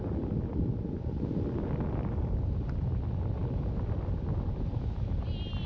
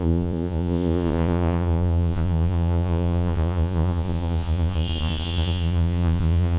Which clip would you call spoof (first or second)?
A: second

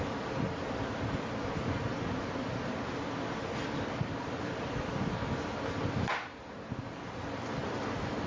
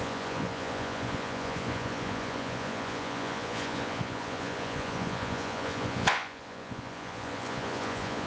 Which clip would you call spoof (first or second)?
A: second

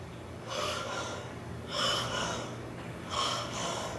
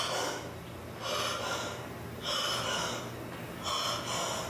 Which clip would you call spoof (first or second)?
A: first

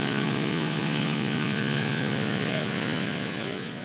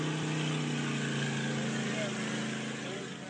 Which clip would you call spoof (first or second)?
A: first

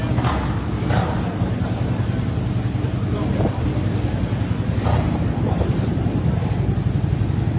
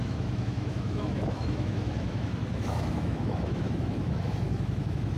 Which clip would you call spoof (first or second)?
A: second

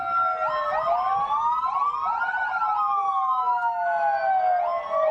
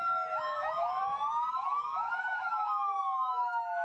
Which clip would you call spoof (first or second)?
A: second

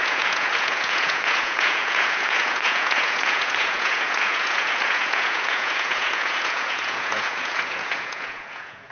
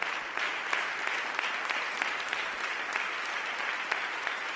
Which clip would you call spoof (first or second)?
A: first